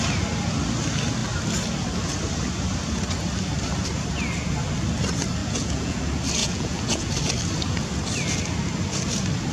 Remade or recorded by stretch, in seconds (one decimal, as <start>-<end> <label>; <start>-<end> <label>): 0.0-5.4 recorded; 5.4-6.0 remade; 6.0-6.4 recorded; 6.4-7.1 remade; 7.1-9.5 recorded

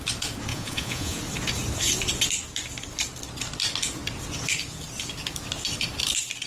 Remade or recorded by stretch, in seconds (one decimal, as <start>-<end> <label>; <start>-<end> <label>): 0.0-0.5 recorded; 0.5-1.2 remade; 1.2-6.5 recorded

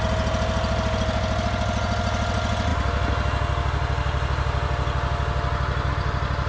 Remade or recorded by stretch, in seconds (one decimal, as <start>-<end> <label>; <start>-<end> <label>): 0.0-6.5 recorded

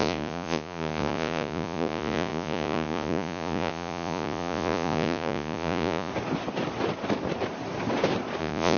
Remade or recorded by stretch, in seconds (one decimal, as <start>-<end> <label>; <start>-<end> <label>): 0.0-6.1 remade; 6.1-8.4 recorded; 8.4-8.8 remade